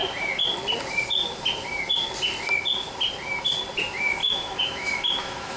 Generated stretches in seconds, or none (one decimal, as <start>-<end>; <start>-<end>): 4.2-5.6